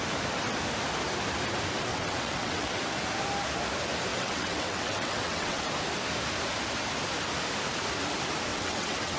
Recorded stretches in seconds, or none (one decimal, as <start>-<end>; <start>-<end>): 0.0-1.9; 2.8-4.1; 5.6-8.5